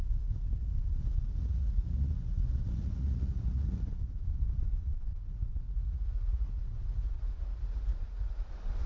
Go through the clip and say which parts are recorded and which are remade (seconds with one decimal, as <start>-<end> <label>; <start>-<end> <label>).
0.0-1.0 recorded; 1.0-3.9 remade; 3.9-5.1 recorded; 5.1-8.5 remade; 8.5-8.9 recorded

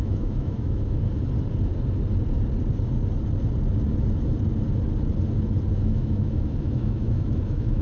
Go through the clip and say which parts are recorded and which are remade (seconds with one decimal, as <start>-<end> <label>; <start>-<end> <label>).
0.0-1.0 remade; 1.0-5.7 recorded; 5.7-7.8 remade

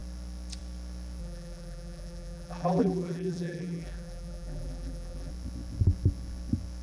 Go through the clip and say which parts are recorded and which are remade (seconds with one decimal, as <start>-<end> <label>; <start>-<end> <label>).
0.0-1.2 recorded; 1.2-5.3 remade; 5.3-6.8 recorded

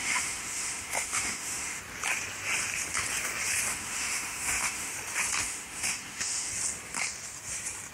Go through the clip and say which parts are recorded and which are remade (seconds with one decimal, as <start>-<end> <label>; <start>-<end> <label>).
0.0-1.8 remade; 1.8-3.7 recorded; 3.7-4.9 remade; 4.9-5.4 recorded; 5.4-6.5 remade; 6.5-7.9 recorded

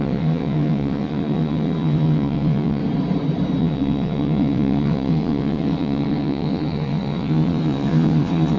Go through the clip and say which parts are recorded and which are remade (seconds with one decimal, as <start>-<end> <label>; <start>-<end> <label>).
0.0-2.8 remade; 2.8-3.6 recorded; 3.6-8.6 remade